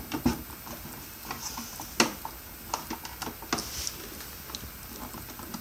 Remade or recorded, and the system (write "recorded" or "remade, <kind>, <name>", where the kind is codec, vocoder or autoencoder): recorded